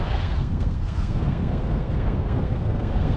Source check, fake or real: fake